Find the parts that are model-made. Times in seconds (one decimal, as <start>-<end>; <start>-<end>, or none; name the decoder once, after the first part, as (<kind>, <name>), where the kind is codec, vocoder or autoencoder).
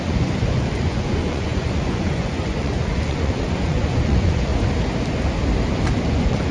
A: 0.0-4.5 (vocoder, Vocos); 6.1-6.5